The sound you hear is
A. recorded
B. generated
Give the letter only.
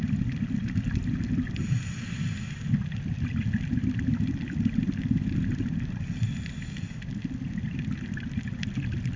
A